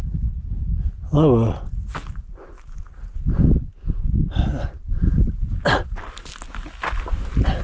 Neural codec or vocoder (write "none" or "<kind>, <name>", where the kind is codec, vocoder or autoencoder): none